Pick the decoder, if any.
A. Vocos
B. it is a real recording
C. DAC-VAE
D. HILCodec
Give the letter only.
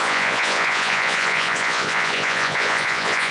A